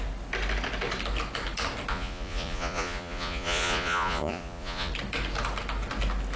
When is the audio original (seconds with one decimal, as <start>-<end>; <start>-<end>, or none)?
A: 0.0-1.9; 4.9-6.4